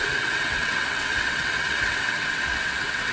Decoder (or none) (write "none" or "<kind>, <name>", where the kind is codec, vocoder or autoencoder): vocoder, WaveNeXt